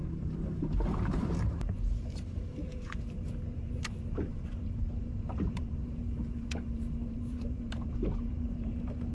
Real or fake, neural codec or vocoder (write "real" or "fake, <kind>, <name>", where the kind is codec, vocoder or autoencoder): fake, vocoder, BigVGAN v2